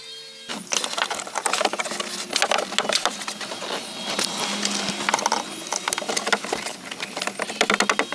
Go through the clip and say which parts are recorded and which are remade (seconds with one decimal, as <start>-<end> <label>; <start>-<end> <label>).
0.0-8.1 recorded